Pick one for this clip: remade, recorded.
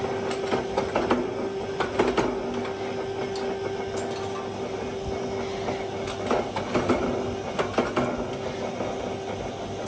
recorded